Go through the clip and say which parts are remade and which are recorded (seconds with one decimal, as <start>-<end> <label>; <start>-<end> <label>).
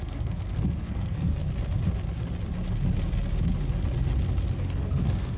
0.0-1.4 remade; 1.4-4.6 recorded; 4.6-5.4 remade